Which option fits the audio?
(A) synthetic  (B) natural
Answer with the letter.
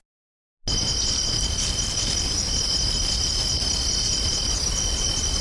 B